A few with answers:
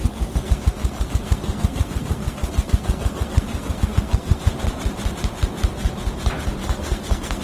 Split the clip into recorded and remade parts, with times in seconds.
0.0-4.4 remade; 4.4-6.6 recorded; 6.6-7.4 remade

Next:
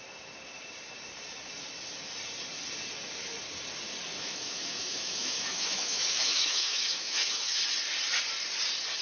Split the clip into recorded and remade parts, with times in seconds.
0.0-4.1 recorded; 4.1-7.6 remade; 7.6-9.0 recorded

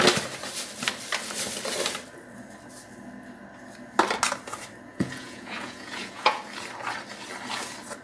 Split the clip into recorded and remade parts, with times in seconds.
0.0-4.9 recorded; 4.9-6.4 remade; 6.4-8.0 recorded

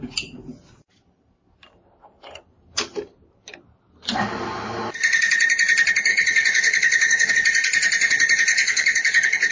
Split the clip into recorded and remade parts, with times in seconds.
0.0-6.1 recorded; 6.1-7.3 remade; 7.3-8.5 recorded; 8.5-9.5 remade

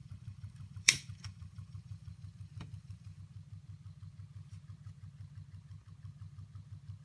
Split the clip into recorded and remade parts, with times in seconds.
0.0-3.2 remade; 3.2-7.0 recorded

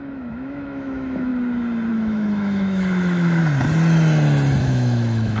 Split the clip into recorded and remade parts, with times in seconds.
0.0-1.3 remade; 1.3-1.9 recorded; 1.9-3.4 remade; 3.4-4.6 recorded; 4.6-5.4 remade

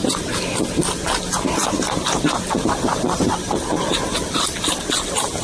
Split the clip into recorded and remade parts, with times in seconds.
0.0-5.4 recorded

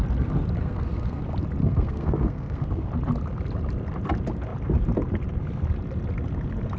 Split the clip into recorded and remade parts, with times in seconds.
0.0-0.6 recorded; 0.6-1.2 remade; 1.2-1.6 recorded; 1.6-2.9 remade; 2.9-6.8 recorded